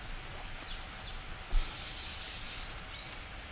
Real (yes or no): yes